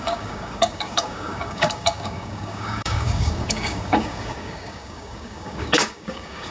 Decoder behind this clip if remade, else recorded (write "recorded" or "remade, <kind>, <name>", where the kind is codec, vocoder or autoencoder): remade, codec, DAC